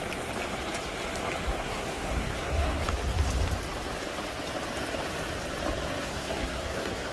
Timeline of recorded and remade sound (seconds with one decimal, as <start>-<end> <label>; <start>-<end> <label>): 0.0-1.5 recorded; 1.5-2.8 remade; 2.8-6.0 recorded; 6.0-7.1 remade